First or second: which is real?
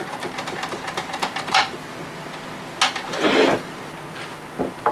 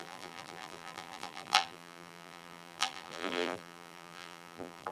first